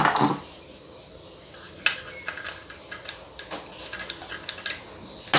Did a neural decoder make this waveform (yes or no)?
no